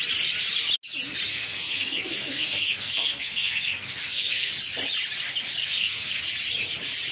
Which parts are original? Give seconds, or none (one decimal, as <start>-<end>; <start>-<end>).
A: 0.0-1.3; 4.5-5.6; 6.2-7.1